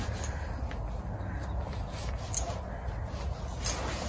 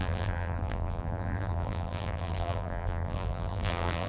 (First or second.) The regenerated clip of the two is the second